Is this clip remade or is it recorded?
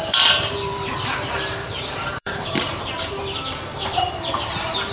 remade